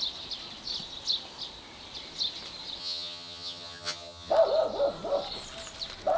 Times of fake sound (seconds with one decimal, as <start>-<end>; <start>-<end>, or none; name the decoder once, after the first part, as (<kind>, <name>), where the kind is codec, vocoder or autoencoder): 2.8-4.3 (vocoder, HiFi-GAN)

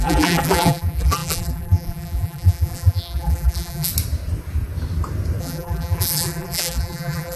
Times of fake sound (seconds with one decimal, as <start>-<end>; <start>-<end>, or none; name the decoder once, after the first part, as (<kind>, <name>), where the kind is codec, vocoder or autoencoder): 0.0-3.9 (vocoder, BigVGAN v2); 5.4-7.4